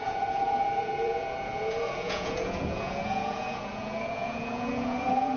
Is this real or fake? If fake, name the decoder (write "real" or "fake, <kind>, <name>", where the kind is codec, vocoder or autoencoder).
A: fake, vocoder, Vocos